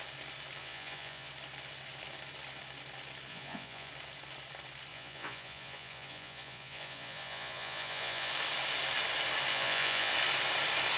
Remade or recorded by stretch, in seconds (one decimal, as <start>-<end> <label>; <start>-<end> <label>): 0.0-0.6 recorded; 0.6-1.3 remade; 1.3-3.3 recorded; 3.3-3.9 remade; 3.9-4.9 recorded; 4.9-8.3 remade; 8.3-9.5 recorded; 9.5-10.1 remade; 10.1-11.0 recorded